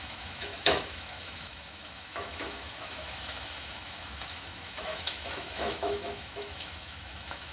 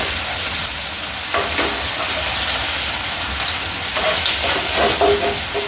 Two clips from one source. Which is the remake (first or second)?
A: first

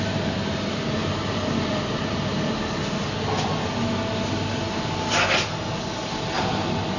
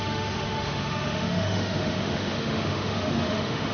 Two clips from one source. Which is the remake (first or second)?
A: second